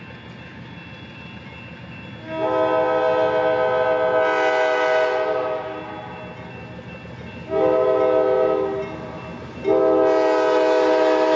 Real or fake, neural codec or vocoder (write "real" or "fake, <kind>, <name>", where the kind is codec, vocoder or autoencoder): real